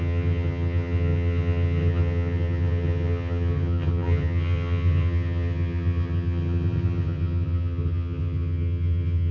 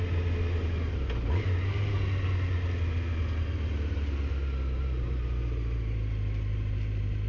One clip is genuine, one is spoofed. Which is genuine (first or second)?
second